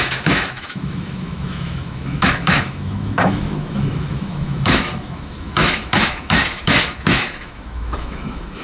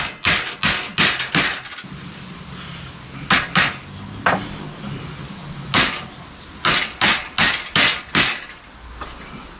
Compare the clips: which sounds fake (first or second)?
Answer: first